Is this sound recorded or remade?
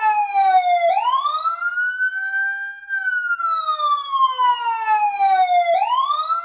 recorded